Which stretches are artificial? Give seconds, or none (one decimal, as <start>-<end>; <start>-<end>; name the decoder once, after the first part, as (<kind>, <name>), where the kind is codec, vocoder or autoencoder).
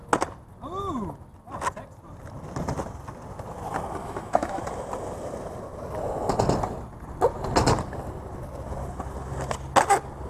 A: 4.0-4.6 (autoencoder, DAC-VAE)